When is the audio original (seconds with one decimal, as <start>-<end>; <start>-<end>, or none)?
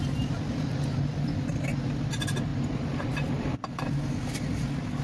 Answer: 0.0-2.5; 3.8-5.0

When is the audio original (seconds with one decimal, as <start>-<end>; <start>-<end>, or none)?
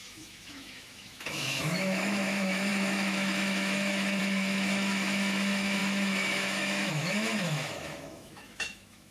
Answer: none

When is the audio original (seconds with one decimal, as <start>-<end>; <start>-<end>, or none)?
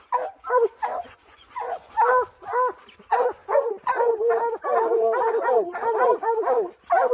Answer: 0.0-0.9; 1.9-3.4; 4.4-7.1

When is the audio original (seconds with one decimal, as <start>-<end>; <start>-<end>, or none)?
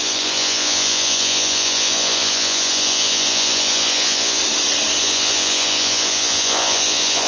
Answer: 4.4-5.0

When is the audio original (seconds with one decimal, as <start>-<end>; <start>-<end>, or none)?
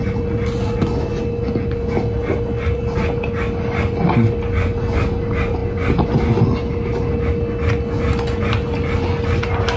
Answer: 0.0-9.8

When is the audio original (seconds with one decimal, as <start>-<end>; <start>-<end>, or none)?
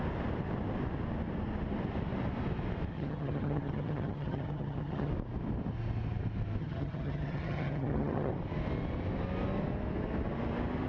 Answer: 0.0-2.9; 5.1-6.6; 8.3-10.9